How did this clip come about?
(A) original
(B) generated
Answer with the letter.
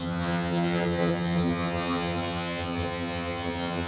B